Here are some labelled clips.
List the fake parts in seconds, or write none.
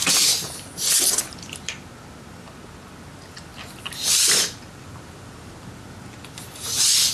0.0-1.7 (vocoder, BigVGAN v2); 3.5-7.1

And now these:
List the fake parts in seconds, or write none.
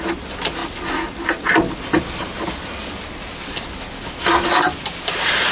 none